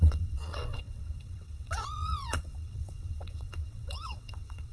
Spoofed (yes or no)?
yes